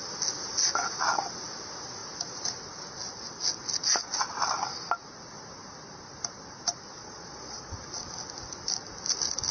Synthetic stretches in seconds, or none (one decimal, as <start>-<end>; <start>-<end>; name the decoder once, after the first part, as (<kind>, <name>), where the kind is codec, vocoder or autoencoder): 7.0-7.8 (vocoder, Vocos)